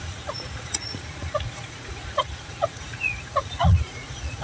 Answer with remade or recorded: remade